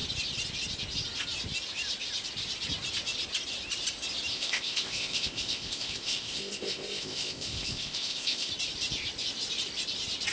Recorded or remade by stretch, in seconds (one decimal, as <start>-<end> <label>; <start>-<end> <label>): 0.0-4.3 recorded; 4.3-8.5 remade; 8.5-10.3 recorded

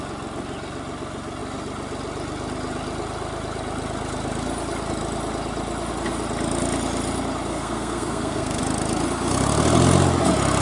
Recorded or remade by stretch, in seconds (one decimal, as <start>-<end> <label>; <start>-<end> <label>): 0.0-7.5 recorded; 7.5-8.6 remade; 8.6-10.6 recorded

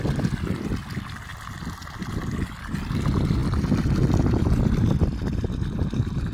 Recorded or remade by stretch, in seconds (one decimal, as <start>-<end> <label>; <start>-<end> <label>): 0.0-6.3 recorded

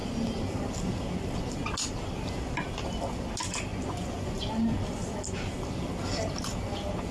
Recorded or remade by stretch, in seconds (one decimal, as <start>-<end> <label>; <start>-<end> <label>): 0.0-3.7 recorded; 3.7-4.5 remade; 4.5-7.1 recorded

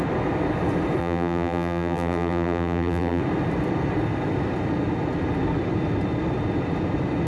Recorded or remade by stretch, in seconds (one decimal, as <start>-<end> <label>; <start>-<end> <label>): 0.0-1.0 recorded; 1.0-3.2 remade; 3.2-7.3 recorded

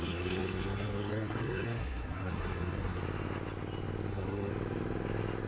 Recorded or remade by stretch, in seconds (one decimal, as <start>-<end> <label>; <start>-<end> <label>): 0.0-3.0 remade; 3.0-4.1 recorded; 4.1-4.5 remade; 4.5-5.5 recorded

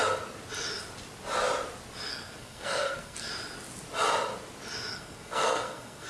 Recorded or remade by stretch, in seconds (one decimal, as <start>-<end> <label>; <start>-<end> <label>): 0.0-2.1 recorded; 2.1-3.3 remade; 3.3-4.9 recorded; 4.9-6.1 remade